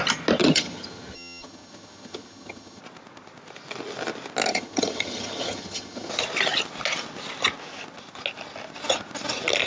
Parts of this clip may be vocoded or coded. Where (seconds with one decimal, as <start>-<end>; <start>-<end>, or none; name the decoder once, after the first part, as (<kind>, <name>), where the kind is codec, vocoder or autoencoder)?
0.4-2.8 (vocoder, HiFi-GAN); 4.5-6.1